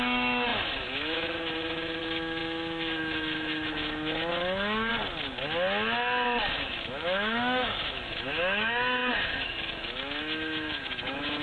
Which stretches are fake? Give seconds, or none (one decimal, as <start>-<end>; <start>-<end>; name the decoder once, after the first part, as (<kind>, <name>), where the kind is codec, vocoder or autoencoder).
0.0-4.9 (autoencoder, DAC-VAE); 6.5-11.4